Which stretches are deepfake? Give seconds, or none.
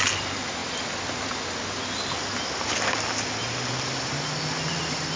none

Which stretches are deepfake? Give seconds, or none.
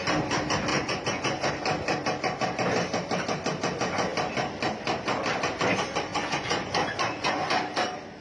0.7-1.5; 6.1-7.6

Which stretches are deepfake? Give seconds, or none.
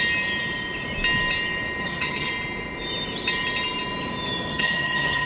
1.8-2.3; 4.5-5.3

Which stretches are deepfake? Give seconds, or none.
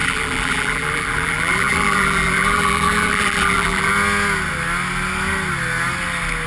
0.0-3.9